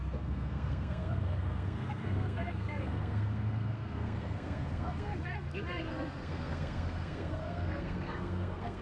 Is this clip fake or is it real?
fake